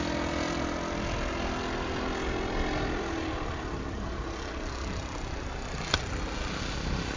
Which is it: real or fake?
real